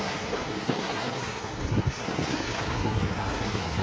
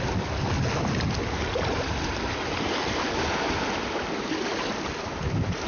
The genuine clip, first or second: second